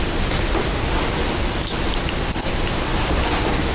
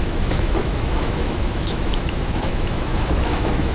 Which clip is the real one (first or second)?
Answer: first